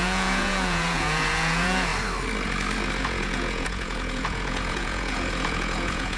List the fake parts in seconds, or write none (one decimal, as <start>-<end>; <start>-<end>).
0.0-1.9; 3.0-6.2